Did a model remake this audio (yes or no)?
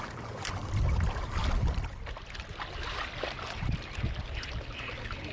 no